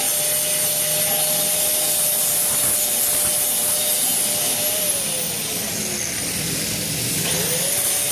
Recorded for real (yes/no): yes